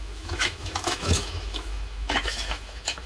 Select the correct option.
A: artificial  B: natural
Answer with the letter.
A